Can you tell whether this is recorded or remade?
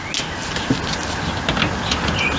recorded